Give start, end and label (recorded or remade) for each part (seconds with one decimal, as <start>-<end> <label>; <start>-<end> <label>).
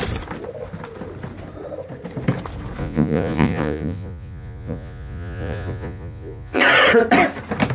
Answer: 0.0-2.8 recorded; 2.8-6.6 remade; 6.6-7.7 recorded